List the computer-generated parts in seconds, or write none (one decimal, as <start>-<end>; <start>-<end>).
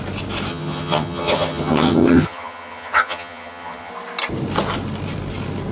0.5-3.9